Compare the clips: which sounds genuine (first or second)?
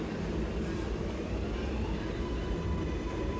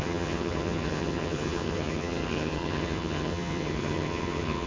first